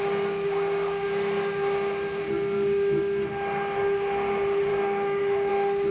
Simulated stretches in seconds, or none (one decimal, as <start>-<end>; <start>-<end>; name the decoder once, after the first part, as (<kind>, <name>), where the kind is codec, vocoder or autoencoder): 4.7-5.5 (codec, DAC)

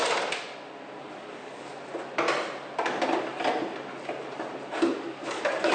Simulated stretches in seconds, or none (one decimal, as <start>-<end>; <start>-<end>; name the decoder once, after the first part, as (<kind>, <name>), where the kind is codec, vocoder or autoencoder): 1.0-1.7 (codec, DAC); 4.9-5.7

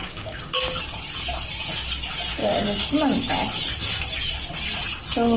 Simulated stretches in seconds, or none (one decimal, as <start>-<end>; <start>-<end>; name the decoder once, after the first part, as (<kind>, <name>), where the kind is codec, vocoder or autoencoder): 0.0-0.8 (codec, DAC); 2.4-2.9